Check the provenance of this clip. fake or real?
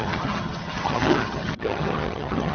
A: fake